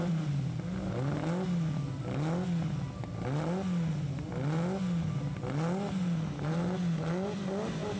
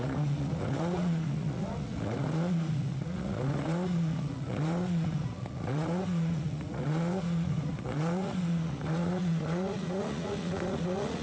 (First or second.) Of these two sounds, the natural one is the first